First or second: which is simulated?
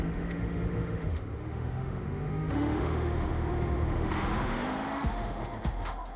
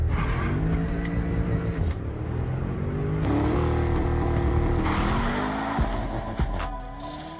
first